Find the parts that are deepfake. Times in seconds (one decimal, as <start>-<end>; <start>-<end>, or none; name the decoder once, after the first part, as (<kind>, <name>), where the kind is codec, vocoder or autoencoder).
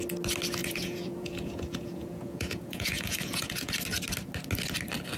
0.6-3.7 (vocoder, Vocos)